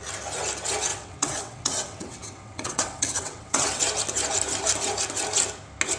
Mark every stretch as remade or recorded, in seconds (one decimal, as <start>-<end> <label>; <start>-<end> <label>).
0.0-0.9 recorded; 0.9-3.8 remade; 3.8-6.0 recorded